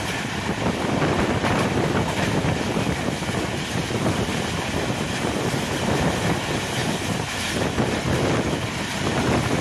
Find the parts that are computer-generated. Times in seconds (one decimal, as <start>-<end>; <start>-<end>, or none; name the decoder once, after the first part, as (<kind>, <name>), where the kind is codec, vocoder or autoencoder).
0.0-6.8 (vocoder, BigVGAN v2); 7.9-9.6